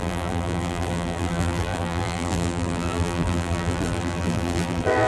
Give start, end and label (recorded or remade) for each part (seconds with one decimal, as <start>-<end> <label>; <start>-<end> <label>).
0.0-5.1 remade